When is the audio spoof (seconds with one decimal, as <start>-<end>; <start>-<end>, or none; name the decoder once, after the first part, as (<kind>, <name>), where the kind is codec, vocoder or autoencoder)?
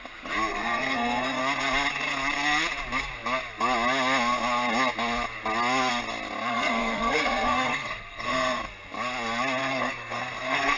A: 0.5-1.4 (codec, SNAC); 6.5-8.6; 9.6-10.8